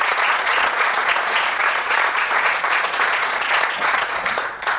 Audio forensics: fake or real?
fake